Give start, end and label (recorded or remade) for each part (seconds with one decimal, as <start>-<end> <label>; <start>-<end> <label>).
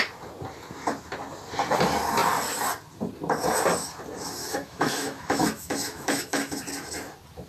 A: 0.0-4.4 recorded; 4.4-6.6 remade; 6.6-7.5 recorded